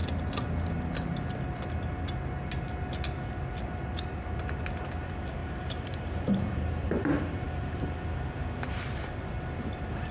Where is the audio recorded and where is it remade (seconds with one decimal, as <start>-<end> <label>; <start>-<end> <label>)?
0.0-5.4 recorded; 5.4-7.8 remade; 7.8-10.1 recorded